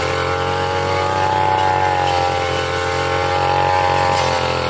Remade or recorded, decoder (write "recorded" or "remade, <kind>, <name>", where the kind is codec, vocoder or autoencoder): recorded